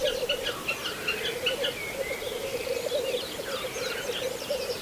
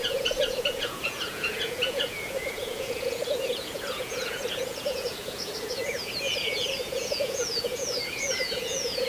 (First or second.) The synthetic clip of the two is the second